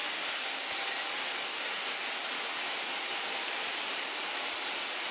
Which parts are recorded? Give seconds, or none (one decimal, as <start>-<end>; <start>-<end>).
0.0-3.1